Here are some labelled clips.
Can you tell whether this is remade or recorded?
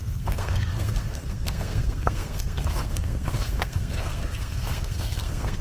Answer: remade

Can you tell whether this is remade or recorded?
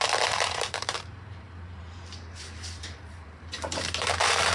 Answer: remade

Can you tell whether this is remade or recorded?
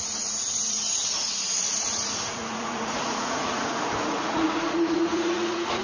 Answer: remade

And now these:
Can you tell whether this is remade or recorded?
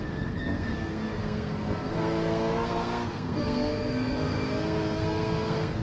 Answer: remade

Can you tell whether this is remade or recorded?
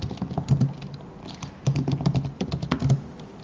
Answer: recorded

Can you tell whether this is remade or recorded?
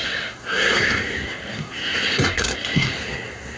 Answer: remade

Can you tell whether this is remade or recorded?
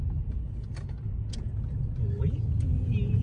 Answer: recorded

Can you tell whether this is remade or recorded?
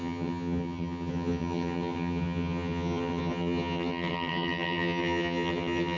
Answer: remade